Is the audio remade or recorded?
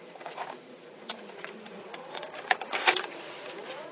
remade